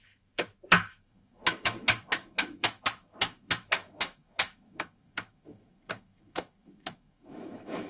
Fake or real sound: fake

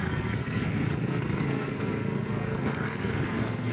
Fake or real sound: fake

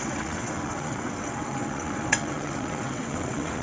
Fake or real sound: fake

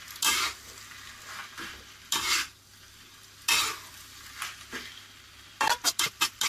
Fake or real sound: real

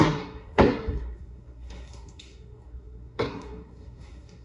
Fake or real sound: fake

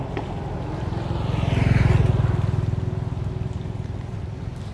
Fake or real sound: real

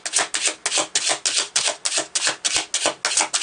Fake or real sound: real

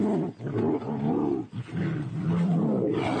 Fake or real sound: real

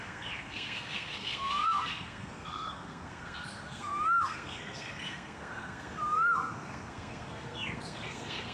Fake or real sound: fake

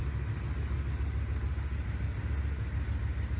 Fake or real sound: real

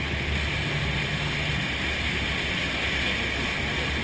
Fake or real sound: real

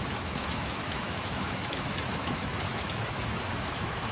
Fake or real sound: fake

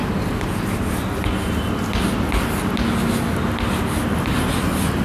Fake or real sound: real